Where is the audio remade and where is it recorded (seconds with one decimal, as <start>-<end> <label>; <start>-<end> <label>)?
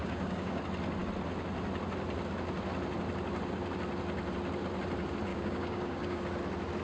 0.0-0.6 remade; 0.6-5.3 recorded; 5.3-6.2 remade; 6.2-6.8 recorded